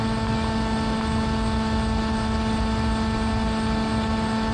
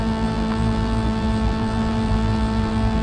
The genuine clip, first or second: first